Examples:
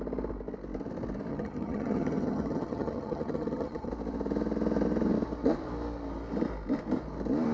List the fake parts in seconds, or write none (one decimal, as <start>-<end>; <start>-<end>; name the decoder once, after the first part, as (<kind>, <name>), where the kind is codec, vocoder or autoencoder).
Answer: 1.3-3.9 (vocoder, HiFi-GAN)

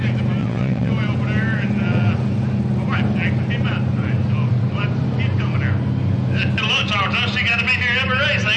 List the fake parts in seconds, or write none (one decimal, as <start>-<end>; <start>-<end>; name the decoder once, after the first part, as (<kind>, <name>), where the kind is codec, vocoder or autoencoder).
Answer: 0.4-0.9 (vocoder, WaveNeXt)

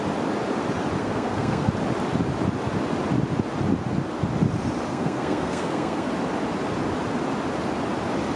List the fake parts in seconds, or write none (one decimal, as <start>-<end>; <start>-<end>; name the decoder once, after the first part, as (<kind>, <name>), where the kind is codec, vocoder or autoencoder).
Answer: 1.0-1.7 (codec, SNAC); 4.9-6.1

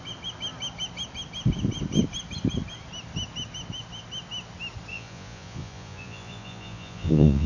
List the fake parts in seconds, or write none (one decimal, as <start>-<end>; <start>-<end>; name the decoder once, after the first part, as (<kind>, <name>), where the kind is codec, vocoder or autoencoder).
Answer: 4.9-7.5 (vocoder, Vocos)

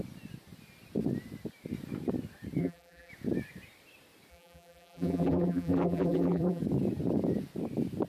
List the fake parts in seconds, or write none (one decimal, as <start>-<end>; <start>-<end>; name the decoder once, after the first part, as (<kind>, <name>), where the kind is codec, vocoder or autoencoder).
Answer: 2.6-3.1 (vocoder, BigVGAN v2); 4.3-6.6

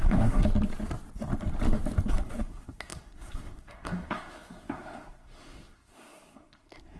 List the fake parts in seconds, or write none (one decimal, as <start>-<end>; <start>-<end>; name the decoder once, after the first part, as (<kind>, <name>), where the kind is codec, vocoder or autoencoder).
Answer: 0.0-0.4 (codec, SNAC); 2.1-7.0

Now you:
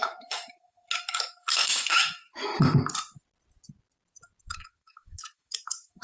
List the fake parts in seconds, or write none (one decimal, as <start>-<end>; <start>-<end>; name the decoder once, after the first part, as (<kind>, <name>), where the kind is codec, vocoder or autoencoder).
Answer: 0.0-2.5 (autoencoder, DAC-VAE); 4.4-6.0

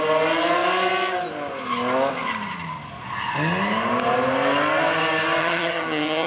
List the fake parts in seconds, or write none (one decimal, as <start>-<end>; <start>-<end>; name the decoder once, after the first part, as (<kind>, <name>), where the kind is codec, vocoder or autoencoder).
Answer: 5.4-6.3 (vocoder, HiFi-GAN)